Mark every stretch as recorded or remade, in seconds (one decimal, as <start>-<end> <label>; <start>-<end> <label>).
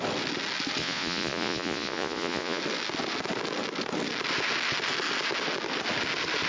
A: 0.0-0.8 recorded; 0.8-2.6 remade; 2.6-6.5 recorded